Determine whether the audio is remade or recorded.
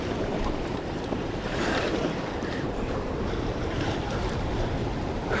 remade